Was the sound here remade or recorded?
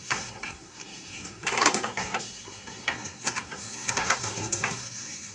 remade